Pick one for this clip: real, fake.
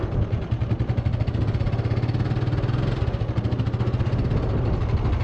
real